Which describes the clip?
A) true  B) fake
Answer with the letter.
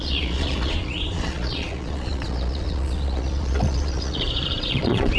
B